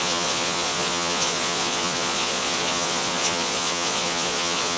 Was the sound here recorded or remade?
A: remade